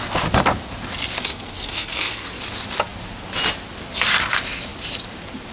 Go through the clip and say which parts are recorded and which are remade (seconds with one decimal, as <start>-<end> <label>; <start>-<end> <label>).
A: 0.0-1.2 recorded; 1.2-2.4 remade; 2.4-5.5 recorded